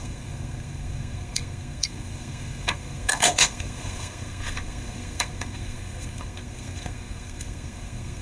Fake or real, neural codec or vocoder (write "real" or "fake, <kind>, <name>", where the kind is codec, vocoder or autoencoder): fake, codec, SNAC